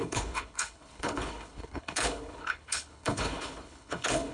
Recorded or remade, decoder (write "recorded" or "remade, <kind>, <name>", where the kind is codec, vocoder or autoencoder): remade, codec, HILCodec